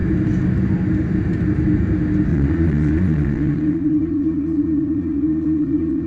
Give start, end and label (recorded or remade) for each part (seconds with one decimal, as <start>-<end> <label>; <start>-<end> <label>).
0.0-2.3 recorded; 2.3-6.1 remade